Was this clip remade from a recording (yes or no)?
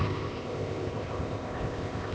yes